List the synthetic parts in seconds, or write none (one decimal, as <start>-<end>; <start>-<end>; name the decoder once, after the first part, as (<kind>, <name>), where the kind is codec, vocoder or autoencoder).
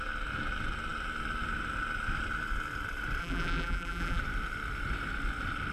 3.2-4.2 (vocoder, BigVGAN v2)